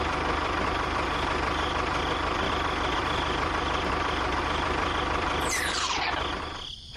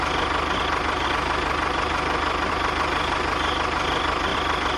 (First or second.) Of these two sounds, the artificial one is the first